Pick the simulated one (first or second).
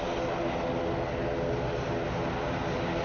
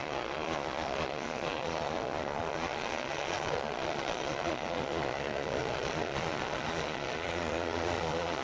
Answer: second